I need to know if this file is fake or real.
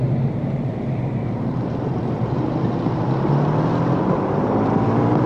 real